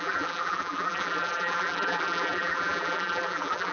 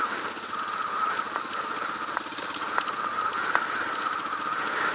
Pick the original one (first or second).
second